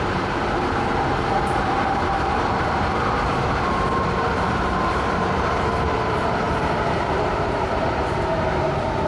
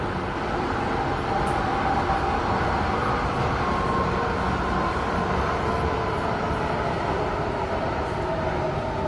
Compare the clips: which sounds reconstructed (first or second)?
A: first